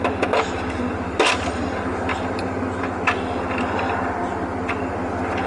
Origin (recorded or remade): recorded